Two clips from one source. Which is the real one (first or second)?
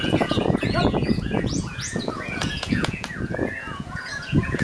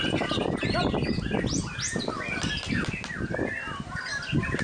second